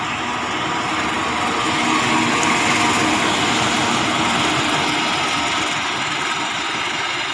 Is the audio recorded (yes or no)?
yes